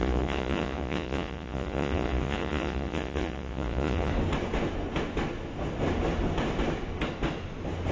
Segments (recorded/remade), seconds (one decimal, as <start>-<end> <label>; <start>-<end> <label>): 0.0-4.1 remade; 4.1-7.9 recorded